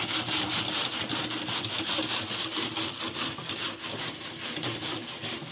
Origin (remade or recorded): recorded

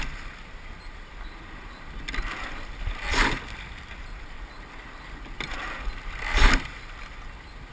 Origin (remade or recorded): recorded